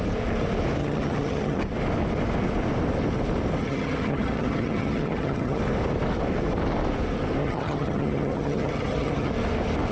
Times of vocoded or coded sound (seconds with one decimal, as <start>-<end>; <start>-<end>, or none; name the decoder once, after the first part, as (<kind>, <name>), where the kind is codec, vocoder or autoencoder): 0.8-1.6 (vocoder, HiFi-GAN); 3.6-5.6; 7.4-9.3